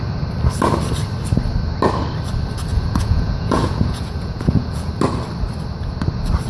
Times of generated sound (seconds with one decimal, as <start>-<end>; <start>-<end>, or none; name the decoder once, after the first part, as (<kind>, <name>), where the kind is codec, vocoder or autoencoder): 2.7-4.9 (vocoder, Vocos)